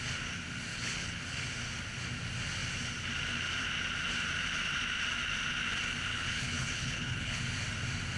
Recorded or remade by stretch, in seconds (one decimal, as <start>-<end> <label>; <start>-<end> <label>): 0.0-0.7 recorded; 0.7-1.2 remade; 1.2-6.1 recorded; 6.1-7.4 remade; 7.4-8.2 recorded